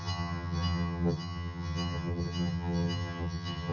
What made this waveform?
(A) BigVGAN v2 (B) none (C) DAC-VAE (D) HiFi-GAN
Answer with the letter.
D